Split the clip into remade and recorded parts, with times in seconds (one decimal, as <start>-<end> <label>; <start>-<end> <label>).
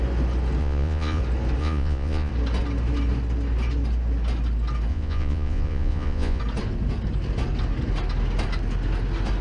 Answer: 0.0-0.6 recorded; 0.6-1.2 remade; 1.2-1.6 recorded; 1.6-2.3 remade; 2.3-4.9 recorded; 4.9-6.4 remade; 6.4-9.4 recorded